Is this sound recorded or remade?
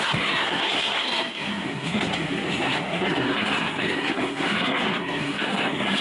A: remade